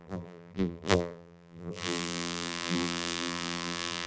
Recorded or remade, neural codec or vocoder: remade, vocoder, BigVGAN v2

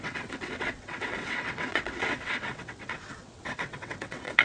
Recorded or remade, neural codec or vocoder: remade, vocoder, WaveNeXt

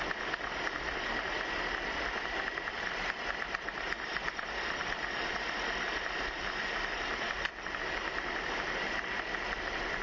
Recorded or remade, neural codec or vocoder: recorded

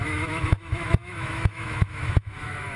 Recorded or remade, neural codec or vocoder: remade, autoencoder, DAC-VAE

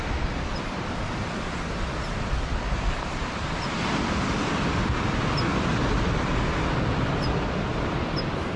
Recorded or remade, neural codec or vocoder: recorded